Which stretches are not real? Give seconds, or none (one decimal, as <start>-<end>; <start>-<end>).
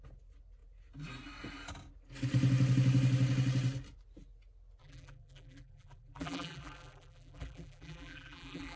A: 4.8-8.8